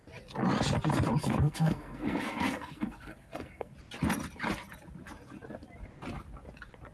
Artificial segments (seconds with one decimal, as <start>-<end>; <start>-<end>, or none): 1.2-3.7